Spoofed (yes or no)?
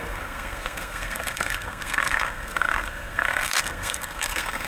yes